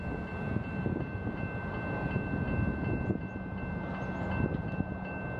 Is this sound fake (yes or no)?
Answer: no